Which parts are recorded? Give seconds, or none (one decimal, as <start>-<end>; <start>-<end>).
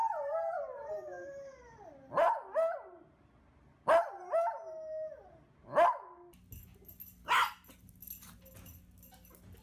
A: 3.4-9.6